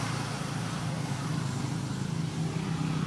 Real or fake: real